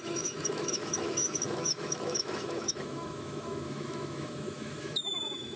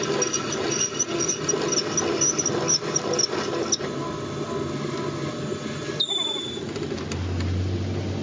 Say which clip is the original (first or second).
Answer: second